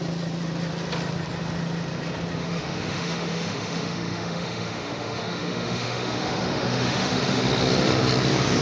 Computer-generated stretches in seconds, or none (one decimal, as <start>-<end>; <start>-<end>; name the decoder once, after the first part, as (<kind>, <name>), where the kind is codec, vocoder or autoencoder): 2.4-7.4 (autoencoder, DAC-VAE)